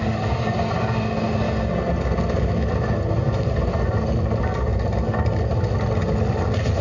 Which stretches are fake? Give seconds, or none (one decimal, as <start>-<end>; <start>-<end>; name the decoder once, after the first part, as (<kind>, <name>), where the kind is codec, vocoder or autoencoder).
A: none